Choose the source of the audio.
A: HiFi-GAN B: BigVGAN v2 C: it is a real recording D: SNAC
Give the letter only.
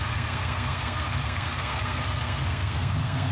D